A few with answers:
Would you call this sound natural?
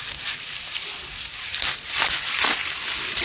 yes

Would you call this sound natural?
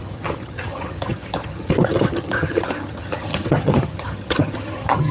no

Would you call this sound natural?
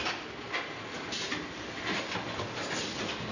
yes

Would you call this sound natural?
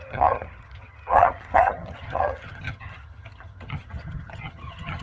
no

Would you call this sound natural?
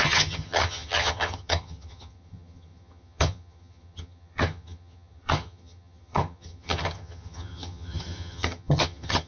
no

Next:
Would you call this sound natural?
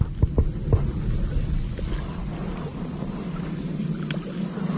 yes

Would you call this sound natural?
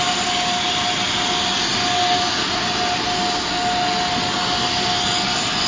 yes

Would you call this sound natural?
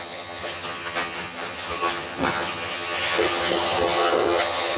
no